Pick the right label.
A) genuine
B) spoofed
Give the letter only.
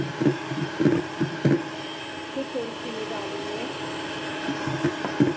A